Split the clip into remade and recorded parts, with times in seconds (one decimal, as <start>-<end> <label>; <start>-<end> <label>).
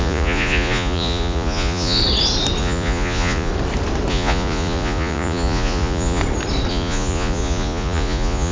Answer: 0.0-2.0 remade; 2.0-2.6 recorded; 2.6-3.5 remade; 3.5-4.1 recorded; 4.1-6.2 remade; 6.2-6.7 recorded; 6.7-8.5 remade